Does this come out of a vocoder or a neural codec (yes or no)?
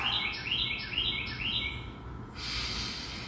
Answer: no